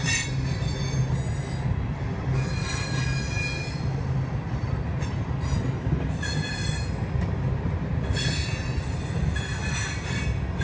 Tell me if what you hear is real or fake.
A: real